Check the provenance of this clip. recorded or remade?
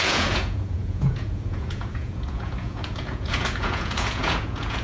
remade